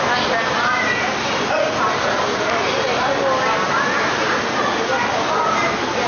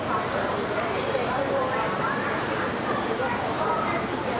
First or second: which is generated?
second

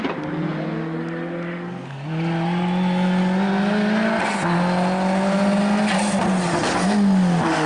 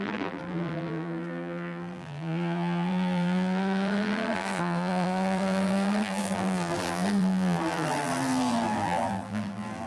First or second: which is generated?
second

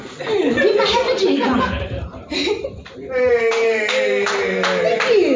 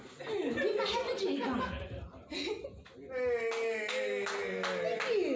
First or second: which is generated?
first